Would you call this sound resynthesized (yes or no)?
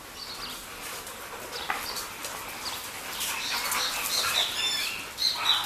no